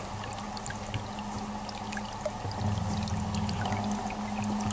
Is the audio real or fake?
real